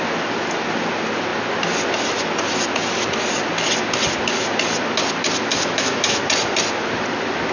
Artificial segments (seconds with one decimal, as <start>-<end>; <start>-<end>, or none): 5.5-6.2